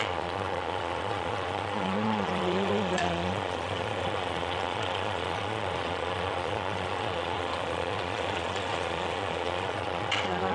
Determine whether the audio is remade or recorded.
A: remade